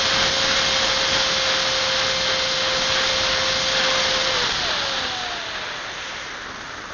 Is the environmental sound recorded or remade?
recorded